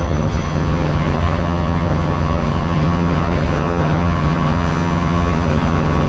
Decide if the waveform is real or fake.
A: fake